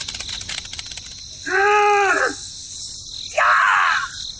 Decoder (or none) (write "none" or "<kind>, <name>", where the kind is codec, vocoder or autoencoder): none